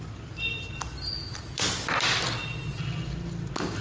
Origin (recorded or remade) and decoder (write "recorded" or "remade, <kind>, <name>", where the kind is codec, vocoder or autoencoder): recorded